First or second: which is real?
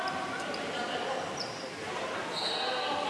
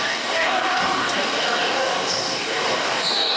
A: first